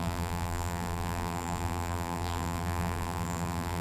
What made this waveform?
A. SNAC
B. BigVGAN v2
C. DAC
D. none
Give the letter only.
B